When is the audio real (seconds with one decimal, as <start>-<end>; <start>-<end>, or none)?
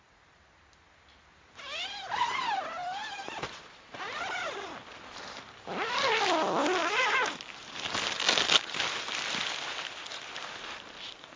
0.0-11.4